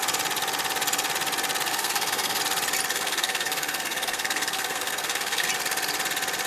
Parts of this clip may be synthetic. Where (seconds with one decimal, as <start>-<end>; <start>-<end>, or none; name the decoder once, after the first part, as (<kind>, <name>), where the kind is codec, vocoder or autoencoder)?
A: 1.7-2.4 (codec, SNAC); 2.9-5.5